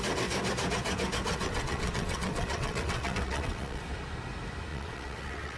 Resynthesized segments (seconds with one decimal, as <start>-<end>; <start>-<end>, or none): 1.3-3.8; 4.7-5.6